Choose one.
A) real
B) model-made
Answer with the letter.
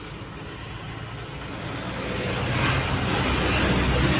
A